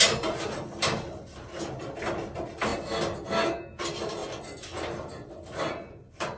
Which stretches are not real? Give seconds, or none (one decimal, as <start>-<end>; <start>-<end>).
0.0-2.7; 3.8-4.2; 5.9-6.4